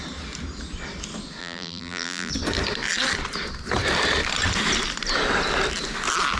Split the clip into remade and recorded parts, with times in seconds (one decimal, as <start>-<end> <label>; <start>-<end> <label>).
0.0-1.4 recorded; 1.4-2.3 remade; 2.3-6.4 recorded